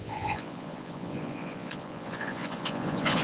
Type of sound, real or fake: fake